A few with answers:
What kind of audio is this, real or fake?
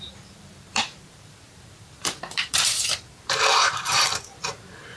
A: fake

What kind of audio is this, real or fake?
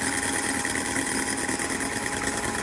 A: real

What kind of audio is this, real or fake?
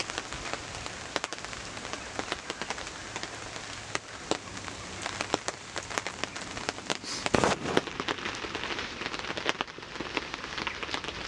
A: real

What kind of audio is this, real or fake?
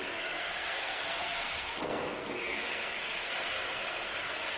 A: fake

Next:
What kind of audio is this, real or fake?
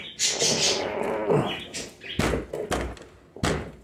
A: real